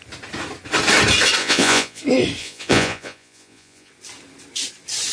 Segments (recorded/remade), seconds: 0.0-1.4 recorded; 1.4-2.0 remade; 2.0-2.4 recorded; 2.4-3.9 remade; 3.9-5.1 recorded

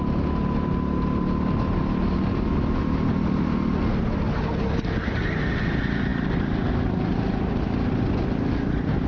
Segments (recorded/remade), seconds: 0.0-9.1 recorded

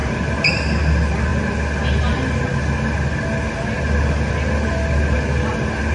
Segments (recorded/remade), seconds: 0.0-5.9 recorded

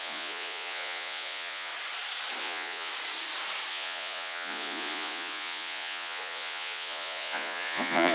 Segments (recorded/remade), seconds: 0.0-1.7 remade; 1.7-2.4 recorded; 2.4-2.9 remade; 2.9-3.7 recorded; 3.7-8.1 remade